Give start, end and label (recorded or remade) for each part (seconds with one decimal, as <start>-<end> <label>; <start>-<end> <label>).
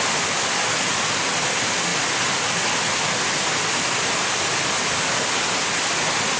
0.0-6.4 recorded